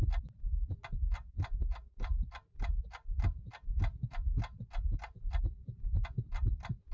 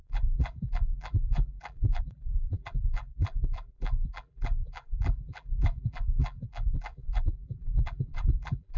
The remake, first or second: second